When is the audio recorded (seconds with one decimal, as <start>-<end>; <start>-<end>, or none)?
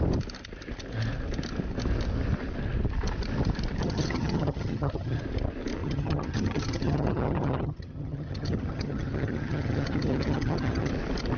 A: 0.0-3.8; 5.2-5.8; 10.9-11.4